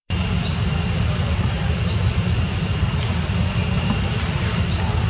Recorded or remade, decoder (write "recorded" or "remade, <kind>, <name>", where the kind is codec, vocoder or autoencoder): remade, vocoder, BigVGAN v2